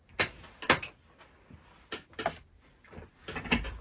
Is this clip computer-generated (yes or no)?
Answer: no